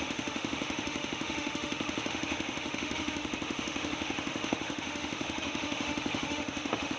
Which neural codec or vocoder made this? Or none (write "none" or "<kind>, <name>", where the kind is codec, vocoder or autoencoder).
autoencoder, DAC-VAE